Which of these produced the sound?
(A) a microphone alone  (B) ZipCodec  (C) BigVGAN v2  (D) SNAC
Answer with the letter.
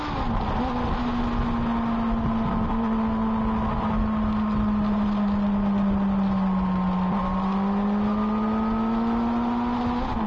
A